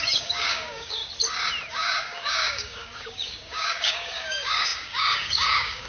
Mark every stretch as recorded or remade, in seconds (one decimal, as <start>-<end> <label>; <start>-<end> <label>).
0.0-1.0 remade; 1.0-1.7 recorded; 1.7-5.9 remade